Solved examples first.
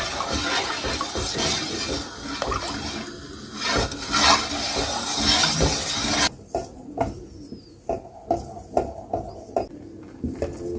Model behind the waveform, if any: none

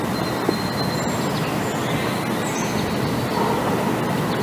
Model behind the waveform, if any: none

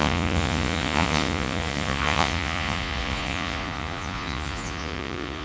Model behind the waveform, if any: vocoder, Vocos